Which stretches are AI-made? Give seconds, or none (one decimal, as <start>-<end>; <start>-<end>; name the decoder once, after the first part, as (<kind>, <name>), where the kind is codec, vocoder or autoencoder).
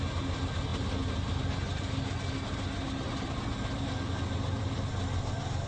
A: none